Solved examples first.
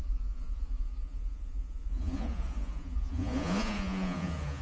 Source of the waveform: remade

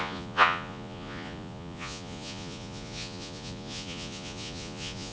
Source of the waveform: remade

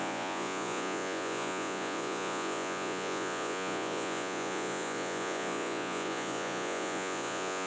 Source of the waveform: remade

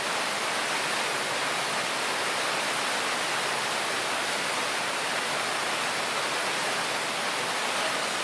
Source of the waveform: recorded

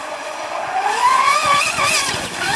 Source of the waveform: remade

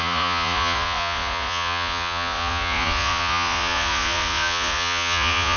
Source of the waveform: remade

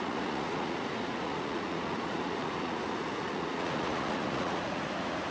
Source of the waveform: remade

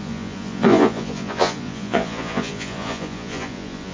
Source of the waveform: remade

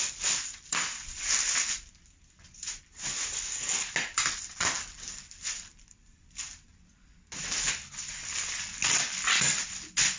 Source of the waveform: recorded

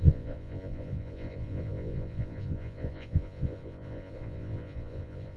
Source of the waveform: remade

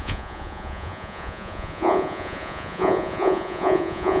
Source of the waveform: remade